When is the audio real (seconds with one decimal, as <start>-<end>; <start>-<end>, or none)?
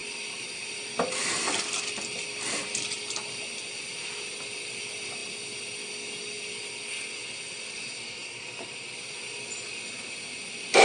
0.0-10.8